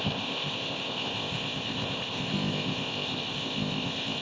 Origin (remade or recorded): remade